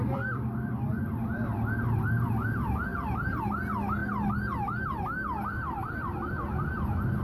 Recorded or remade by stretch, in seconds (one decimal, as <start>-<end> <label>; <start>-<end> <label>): 0.0-0.9 remade; 0.9-7.2 recorded